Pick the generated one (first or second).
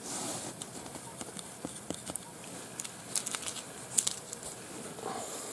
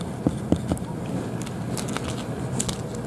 first